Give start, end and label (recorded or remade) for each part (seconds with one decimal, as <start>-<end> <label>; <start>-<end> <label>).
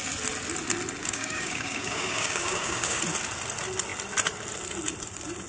0.0-1.0 recorded; 1.0-3.0 remade; 3.0-5.5 recorded